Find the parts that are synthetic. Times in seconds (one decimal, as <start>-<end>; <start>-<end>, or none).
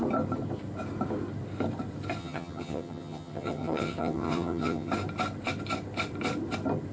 2.2-4.9